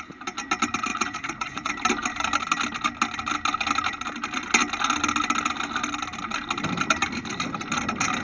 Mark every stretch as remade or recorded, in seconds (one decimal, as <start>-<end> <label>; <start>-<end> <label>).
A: 0.0-0.9 recorded; 0.9-1.7 remade; 1.7-8.2 recorded